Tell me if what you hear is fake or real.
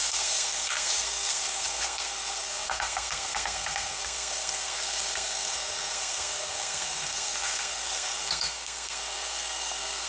fake